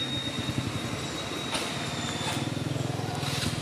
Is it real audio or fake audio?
real